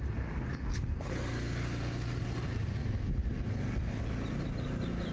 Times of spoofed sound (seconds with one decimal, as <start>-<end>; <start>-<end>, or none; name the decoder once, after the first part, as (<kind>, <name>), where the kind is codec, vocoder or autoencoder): none